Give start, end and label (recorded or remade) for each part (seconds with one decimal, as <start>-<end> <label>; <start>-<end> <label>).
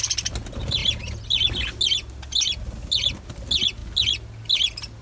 0.0-5.0 recorded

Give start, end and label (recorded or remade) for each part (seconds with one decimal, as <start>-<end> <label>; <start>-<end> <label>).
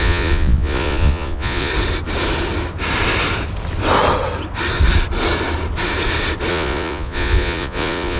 0.0-1.7 remade; 1.7-6.5 recorded; 6.5-8.2 remade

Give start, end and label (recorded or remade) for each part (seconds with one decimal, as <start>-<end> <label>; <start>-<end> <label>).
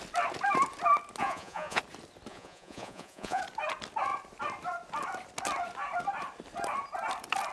0.0-1.2 recorded; 1.2-1.8 remade; 1.8-2.3 recorded; 2.3-3.4 remade; 3.4-7.5 recorded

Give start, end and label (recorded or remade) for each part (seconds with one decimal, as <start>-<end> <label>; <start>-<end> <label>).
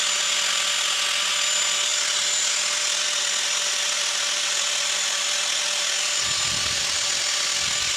0.0-8.0 recorded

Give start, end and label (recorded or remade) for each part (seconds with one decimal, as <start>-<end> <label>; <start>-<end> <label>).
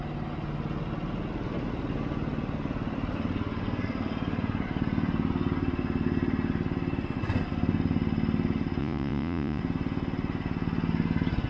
0.0-8.8 recorded; 8.8-9.6 remade; 9.6-11.5 recorded